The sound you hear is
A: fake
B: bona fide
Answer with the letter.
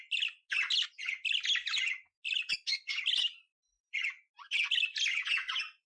B